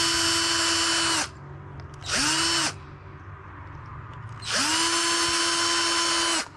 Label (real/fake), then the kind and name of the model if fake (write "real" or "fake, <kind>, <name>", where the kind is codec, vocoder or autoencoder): real